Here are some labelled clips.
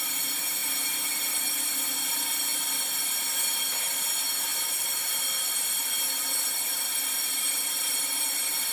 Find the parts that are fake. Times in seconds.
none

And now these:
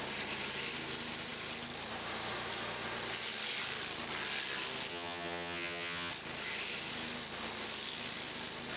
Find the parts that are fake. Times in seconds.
4.9-6.1 (vocoder, HiFi-GAN)

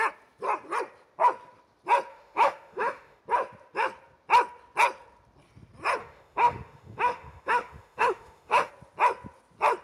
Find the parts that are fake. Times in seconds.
2.1-3.2 (autoencoder, DAC-VAE); 6.0-8.7

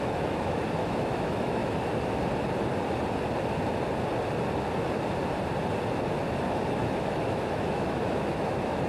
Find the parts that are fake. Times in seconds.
0.0-1.6 (autoencoder, DAC-VAE); 6.7-8.9

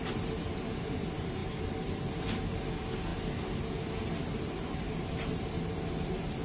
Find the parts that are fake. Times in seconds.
none

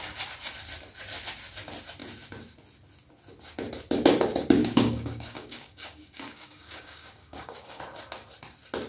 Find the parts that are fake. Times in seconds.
4.6-7.8 (codec, DAC)

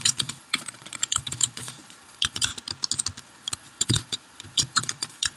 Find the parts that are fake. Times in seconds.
0.0-2.5 (vocoder, Vocos); 3.2-5.4